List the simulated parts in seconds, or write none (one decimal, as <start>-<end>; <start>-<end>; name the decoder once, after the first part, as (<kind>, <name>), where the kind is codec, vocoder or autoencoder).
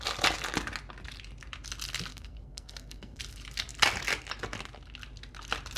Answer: 2.1-3.2 (codec, SNAC)